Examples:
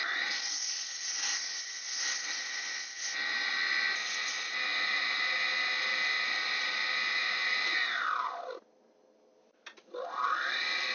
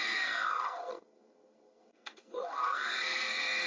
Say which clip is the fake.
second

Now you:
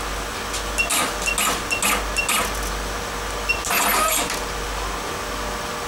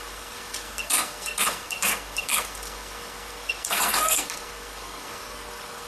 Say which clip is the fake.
second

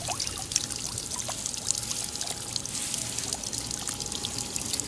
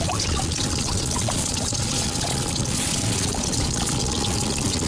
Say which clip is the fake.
second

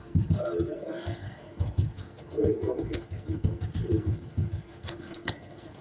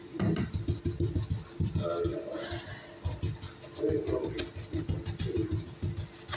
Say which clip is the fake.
first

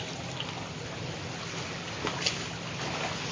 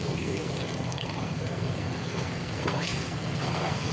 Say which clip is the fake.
second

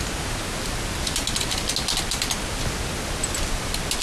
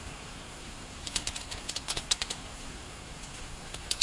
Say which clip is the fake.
second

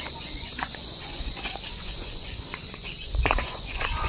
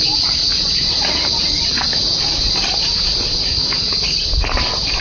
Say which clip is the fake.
first